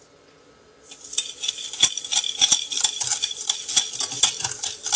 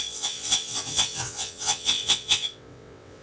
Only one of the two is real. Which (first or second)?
first